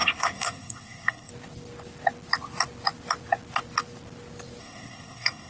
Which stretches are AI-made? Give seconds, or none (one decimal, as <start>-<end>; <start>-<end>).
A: 0.0-1.3; 4.6-5.5